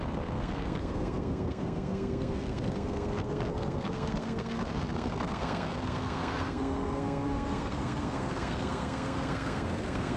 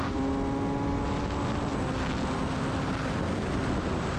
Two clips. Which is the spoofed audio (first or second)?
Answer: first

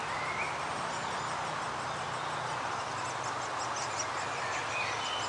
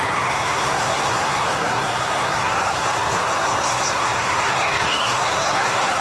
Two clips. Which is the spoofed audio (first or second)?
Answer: second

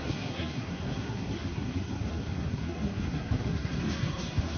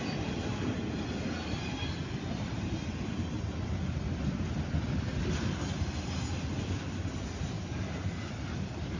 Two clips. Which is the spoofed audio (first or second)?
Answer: first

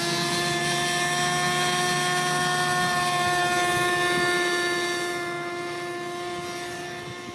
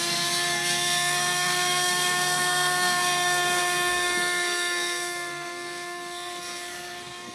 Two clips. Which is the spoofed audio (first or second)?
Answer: second